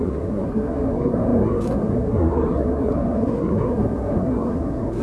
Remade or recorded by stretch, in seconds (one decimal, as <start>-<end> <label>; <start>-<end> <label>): 0.0-5.0 remade